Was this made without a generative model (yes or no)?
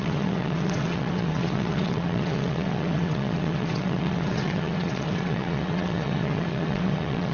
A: no